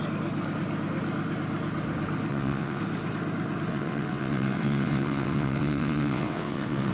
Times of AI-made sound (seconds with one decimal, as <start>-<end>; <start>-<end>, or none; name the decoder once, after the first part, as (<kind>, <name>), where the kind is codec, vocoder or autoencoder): 2.3-2.8 (vocoder, WaveNeXt); 3.7-6.9